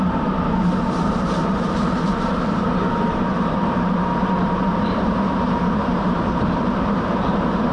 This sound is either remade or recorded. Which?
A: remade